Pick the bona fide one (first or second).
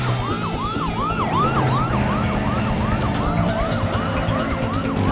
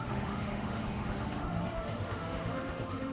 first